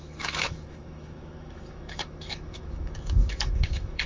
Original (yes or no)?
no